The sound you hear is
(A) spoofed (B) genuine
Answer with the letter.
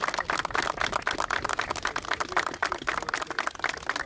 B